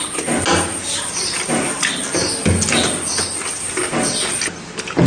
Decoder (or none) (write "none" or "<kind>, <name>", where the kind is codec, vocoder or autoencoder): none